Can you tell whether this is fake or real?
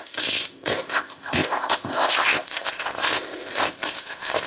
fake